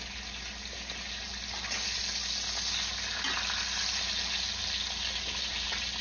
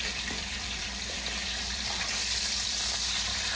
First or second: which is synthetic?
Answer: second